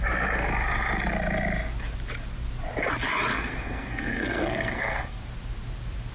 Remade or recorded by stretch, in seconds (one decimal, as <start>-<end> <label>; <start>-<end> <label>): 0.0-3.3 recorded; 3.3-5.2 remade; 5.2-6.1 recorded